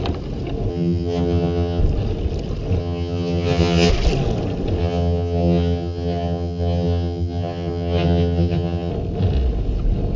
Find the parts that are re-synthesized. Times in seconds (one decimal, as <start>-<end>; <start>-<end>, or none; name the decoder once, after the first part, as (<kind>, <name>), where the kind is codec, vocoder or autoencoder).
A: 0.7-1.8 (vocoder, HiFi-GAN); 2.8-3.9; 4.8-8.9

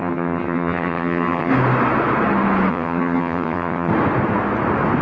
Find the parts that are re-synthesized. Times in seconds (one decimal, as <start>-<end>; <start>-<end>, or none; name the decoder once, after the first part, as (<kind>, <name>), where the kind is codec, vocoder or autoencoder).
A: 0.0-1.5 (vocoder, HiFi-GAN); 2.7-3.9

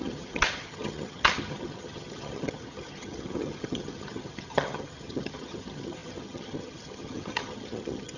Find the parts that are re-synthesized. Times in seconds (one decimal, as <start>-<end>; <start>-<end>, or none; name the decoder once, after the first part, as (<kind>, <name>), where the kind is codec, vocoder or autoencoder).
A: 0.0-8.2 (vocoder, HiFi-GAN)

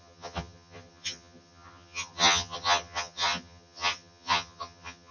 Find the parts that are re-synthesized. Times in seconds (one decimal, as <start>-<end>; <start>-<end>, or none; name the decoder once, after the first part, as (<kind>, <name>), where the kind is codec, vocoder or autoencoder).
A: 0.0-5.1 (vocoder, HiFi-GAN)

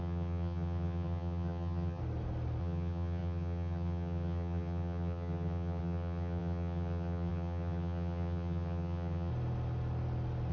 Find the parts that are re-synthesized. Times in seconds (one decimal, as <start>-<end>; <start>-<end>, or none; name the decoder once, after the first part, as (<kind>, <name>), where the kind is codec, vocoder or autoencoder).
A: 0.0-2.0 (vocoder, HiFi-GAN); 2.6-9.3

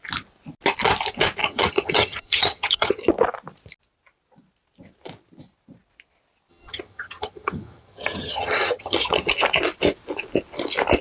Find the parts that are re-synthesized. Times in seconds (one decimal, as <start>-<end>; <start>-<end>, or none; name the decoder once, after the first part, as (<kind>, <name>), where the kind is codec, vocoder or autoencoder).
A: 1.4-3.0 (vocoder, HiFi-GAN); 6.5-9.3